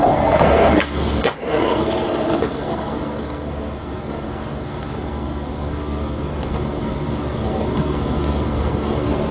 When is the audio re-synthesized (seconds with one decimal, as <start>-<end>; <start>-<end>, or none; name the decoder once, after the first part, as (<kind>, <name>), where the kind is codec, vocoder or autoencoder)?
0.0-9.3 (codec, SNAC)